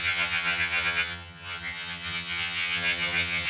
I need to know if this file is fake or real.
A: fake